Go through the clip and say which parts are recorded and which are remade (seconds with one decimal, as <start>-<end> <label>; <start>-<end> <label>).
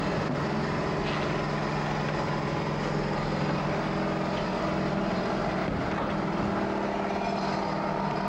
0.0-5.6 recorded; 5.6-6.5 remade; 6.5-8.3 recorded